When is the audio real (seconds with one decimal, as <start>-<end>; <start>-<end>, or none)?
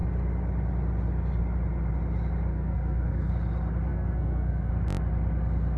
0.0-2.5; 3.3-3.9; 4.7-5.8